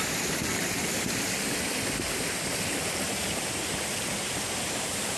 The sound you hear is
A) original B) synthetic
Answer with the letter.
B